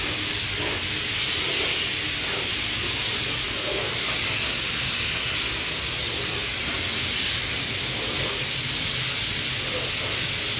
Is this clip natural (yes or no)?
yes